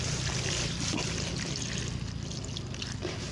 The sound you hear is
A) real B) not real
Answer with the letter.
A